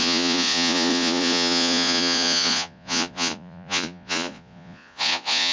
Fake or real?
fake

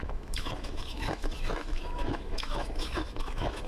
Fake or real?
fake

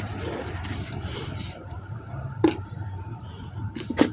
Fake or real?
fake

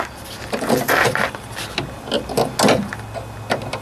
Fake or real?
real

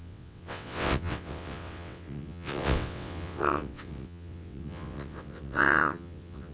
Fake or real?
fake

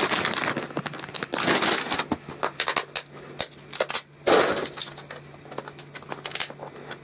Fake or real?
real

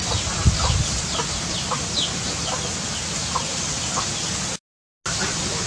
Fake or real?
real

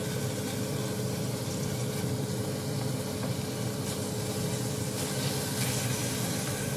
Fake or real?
real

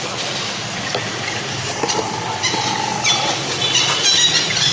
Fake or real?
real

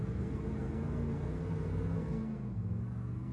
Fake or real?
fake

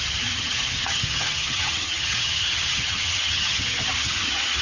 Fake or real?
fake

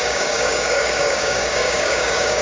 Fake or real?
fake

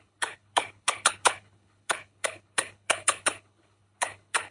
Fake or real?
fake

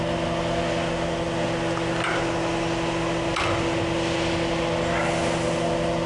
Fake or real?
real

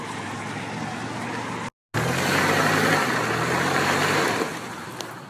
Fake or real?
real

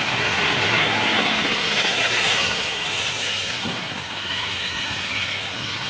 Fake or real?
fake